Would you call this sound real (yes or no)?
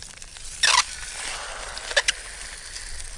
yes